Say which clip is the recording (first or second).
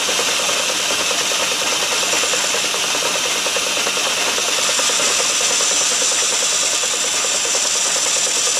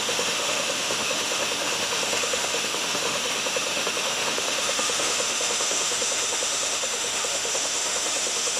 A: first